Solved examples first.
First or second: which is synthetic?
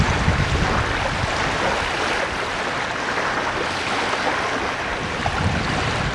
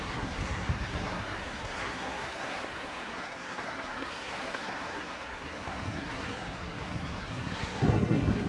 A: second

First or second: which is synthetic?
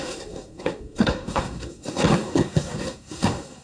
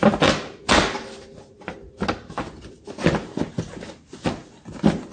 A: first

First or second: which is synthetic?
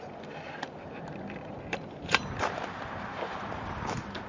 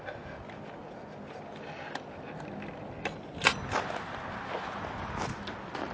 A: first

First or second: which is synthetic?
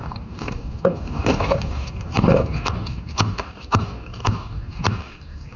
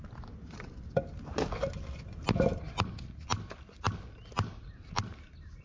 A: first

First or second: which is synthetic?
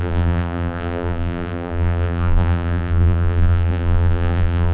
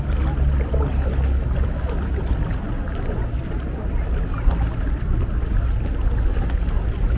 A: first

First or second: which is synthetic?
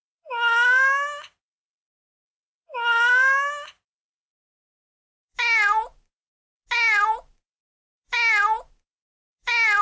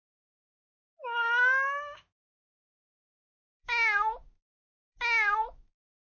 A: second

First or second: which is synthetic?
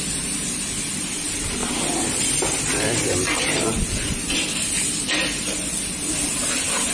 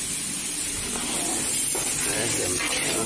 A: first